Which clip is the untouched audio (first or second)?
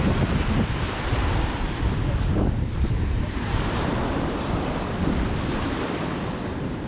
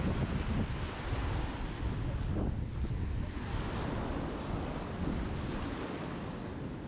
second